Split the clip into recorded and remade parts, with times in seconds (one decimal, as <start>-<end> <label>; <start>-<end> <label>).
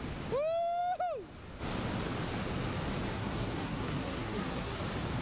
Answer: 0.0-3.1 recorded; 3.1-4.8 remade; 4.8-5.2 recorded